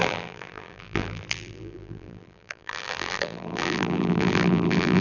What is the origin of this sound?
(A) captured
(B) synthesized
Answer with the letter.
B